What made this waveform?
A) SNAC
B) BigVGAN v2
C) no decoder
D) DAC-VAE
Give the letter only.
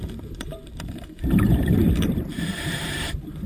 B